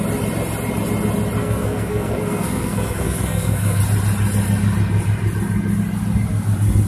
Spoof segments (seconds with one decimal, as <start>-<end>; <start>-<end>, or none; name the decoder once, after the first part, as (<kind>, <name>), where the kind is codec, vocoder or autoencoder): 1.4-3.8 (codec, SNAC)